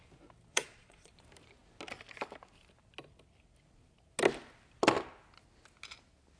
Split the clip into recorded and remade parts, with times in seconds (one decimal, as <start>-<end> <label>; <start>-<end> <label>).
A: 0.0-0.5 recorded; 0.5-1.1 remade; 1.1-6.4 recorded